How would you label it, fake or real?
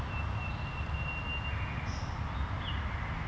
real